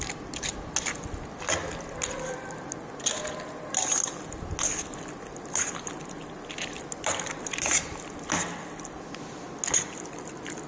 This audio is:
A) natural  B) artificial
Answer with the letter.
A